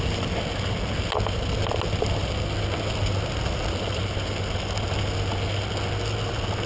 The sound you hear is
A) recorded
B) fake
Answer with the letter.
A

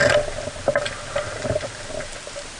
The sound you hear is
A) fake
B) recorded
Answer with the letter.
B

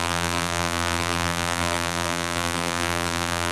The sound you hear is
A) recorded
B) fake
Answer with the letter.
B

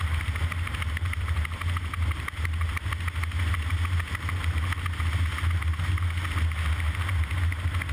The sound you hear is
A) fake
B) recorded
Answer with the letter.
B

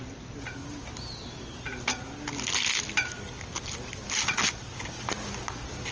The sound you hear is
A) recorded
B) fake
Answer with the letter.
A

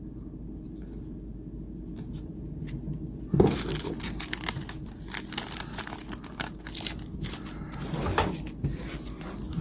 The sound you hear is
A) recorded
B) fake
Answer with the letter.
A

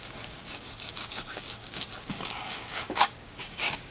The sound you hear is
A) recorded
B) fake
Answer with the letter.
B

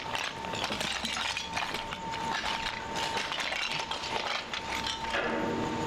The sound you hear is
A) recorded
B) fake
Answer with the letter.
A